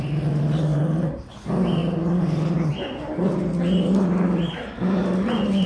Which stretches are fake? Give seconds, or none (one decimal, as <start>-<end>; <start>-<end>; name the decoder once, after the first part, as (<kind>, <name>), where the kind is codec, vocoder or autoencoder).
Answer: none